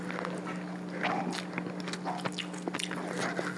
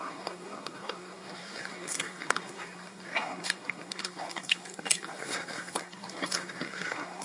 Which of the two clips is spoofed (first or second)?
second